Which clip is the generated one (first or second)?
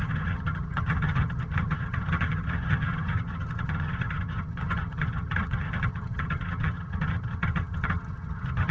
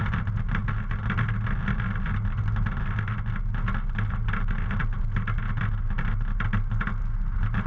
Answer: first